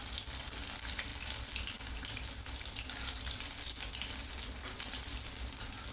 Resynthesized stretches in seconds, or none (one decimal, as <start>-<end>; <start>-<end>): none